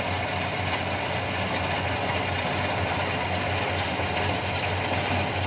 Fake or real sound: real